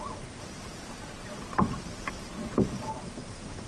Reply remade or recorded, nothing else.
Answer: recorded